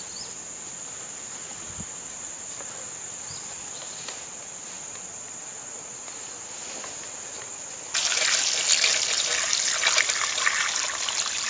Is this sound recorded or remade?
recorded